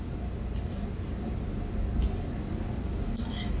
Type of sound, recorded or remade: recorded